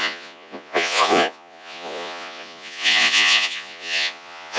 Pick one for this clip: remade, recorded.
remade